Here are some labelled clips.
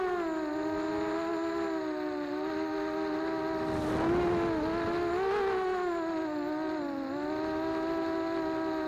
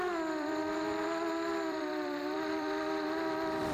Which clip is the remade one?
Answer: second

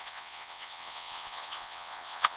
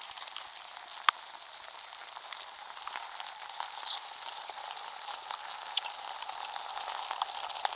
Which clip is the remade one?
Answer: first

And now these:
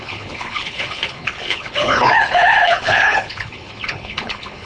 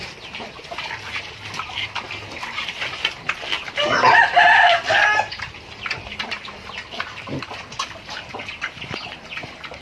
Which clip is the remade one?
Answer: first